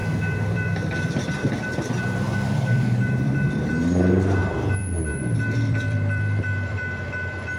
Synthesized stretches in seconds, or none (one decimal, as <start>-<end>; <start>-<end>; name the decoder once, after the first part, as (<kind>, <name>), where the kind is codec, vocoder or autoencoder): 0.0-3.7 (vocoder, BigVGAN v2); 4.4-7.6